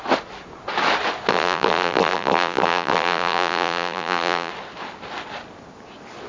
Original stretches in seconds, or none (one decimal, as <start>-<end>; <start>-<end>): 0.0-1.3; 4.5-6.3